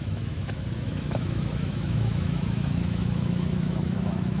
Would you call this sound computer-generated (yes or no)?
yes